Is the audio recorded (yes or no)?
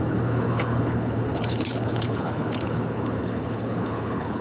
no